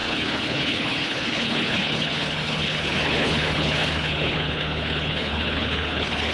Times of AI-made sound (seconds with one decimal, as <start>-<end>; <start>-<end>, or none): 0.0-6.3